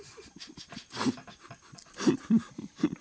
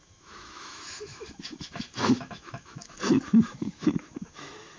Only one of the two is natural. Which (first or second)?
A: first